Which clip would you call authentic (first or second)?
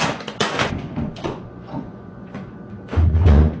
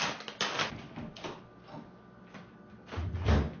second